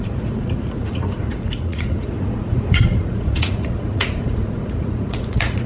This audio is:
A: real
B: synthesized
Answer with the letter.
B